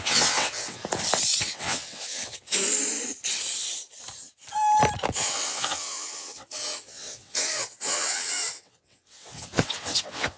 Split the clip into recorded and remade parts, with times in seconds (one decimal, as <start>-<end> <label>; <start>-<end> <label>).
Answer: 0.0-0.8 remade; 0.8-1.4 recorded; 1.4-2.6 remade; 2.6-5.1 recorded; 5.1-10.4 remade